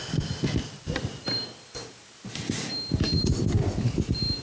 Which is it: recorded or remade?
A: recorded